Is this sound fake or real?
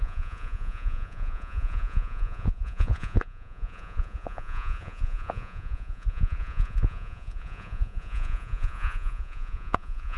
fake